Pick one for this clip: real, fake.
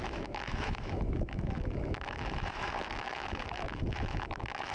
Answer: fake